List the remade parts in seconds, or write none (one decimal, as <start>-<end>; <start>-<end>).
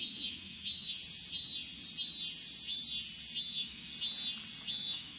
0.0-1.0; 3.5-3.9; 4.7-5.2